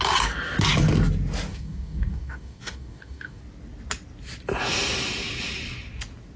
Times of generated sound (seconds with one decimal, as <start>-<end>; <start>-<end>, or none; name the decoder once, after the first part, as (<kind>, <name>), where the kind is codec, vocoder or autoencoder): 1.5-3.4 (codec, DAC)

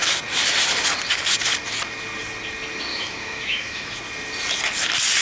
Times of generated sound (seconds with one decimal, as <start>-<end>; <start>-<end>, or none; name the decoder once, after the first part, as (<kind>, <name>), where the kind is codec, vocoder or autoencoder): 2.9-4.0 (autoencoder, DAC-VAE)

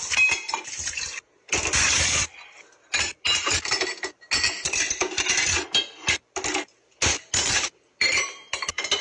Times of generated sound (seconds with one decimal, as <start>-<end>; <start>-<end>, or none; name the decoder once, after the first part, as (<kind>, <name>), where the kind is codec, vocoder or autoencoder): none

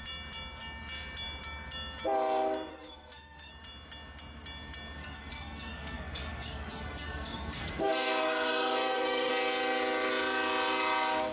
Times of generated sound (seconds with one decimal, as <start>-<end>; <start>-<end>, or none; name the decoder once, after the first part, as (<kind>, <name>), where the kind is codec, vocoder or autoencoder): 2.7-3.5 (codec, SNAC); 5.0-9.3

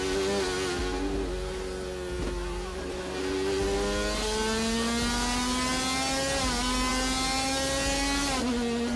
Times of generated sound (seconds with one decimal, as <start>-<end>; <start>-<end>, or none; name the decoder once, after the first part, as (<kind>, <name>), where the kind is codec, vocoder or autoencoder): none

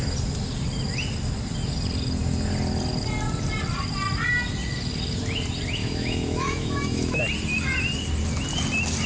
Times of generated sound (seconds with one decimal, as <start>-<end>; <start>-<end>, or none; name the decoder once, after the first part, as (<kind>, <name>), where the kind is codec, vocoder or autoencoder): 5.8-7.2 (autoencoder, DAC-VAE)

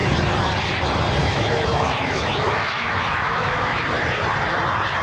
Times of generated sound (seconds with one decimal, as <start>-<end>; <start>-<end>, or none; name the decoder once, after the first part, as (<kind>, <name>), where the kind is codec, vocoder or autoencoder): 1.2-3.8 (autoencoder, DAC-VAE)

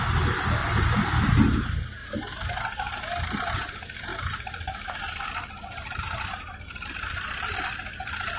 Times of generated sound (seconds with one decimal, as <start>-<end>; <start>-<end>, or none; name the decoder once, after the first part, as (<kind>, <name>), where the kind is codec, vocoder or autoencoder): 0.6-1.3 (vocoder, BigVGAN v2); 4.1-8.4